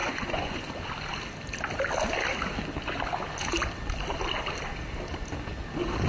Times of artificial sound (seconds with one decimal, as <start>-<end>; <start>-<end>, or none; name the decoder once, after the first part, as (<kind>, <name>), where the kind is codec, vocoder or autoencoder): 0.0-0.7 (vocoder, Vocos)